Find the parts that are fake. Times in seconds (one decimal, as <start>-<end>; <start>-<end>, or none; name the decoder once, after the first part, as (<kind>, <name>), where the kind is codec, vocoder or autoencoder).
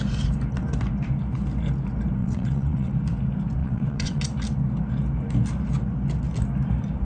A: 2.2-2.9 (vocoder, WaveNeXt); 3.6-4.2